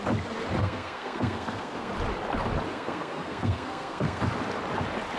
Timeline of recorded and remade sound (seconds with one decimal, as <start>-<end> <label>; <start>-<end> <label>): 0.0-0.6 recorded; 0.6-1.9 remade; 1.9-2.7 recorded; 2.7-4.2 remade; 4.2-5.2 recorded